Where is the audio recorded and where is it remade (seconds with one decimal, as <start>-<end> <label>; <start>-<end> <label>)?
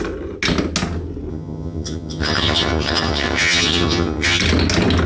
0.0-1.3 recorded; 1.3-4.4 remade; 4.4-5.1 recorded